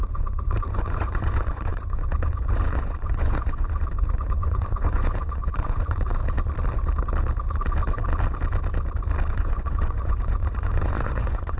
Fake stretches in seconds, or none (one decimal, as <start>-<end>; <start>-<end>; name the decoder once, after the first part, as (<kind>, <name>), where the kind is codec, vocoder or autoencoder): 0.0-6.2 (vocoder, Vocos); 9.3-11.6